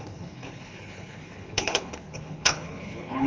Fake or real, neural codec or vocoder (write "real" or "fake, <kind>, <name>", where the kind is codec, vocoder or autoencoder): fake, codec, HILCodec